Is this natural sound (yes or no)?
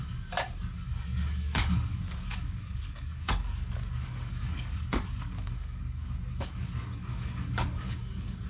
no